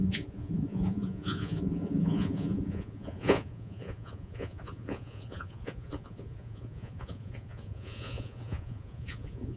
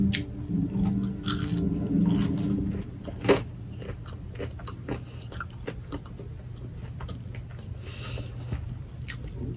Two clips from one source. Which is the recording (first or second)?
second